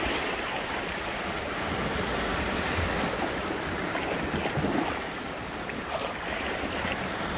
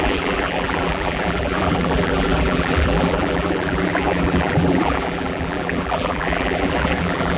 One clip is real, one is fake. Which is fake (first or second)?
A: second